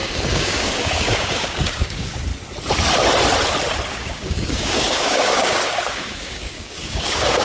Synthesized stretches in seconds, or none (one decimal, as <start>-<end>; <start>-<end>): 0.0-2.3; 3.9-7.4